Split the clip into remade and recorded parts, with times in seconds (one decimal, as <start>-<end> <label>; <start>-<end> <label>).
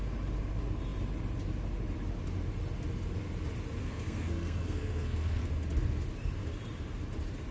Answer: 0.0-3.8 recorded; 3.8-5.5 remade; 5.5-7.5 recorded